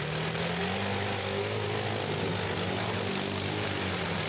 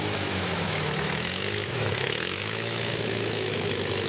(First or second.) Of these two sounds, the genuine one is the first